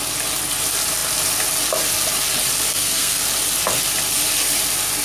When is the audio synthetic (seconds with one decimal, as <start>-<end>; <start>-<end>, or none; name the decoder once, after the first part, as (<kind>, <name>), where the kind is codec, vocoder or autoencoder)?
2.7-3.2 (codec, SNAC)